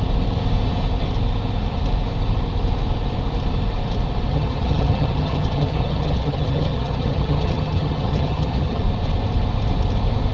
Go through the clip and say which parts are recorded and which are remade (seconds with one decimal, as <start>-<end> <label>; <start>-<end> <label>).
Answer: 0.0-4.3 recorded; 4.3-8.8 remade; 8.8-10.3 recorded